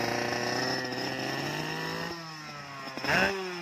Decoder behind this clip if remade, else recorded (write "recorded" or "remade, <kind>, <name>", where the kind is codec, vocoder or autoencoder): recorded